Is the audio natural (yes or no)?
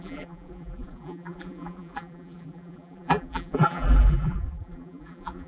no